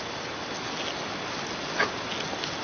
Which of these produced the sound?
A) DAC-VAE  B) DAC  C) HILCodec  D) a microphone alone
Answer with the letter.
D